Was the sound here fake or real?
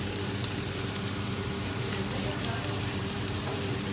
fake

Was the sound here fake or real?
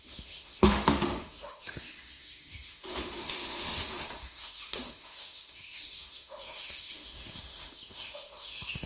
fake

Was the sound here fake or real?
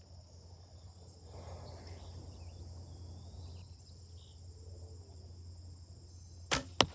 real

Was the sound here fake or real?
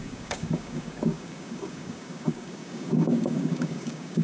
fake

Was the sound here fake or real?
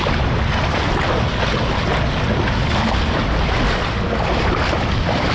real